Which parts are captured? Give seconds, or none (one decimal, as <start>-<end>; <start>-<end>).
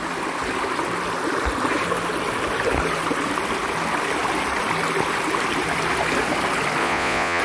0.0-6.8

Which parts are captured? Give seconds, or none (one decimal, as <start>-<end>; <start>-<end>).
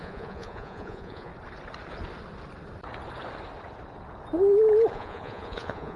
1.3-4.9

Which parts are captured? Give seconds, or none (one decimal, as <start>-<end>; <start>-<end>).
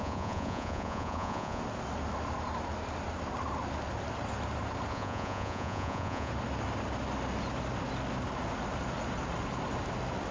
1.6-4.9; 6.3-10.3